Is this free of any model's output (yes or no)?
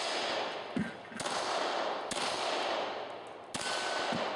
yes